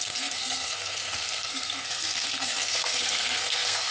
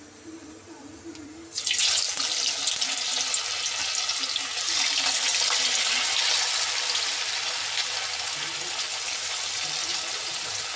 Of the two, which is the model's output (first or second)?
first